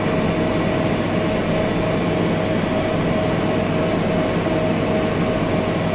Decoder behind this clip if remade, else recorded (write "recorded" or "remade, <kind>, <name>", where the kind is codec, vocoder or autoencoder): recorded